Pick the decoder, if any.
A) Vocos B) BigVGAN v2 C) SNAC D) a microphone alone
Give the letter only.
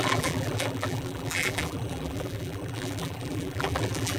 B